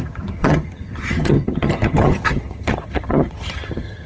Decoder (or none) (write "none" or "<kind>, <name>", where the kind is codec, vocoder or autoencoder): vocoder, HiFi-GAN